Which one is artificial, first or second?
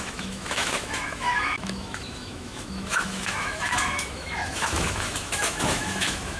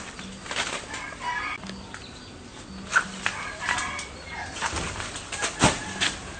first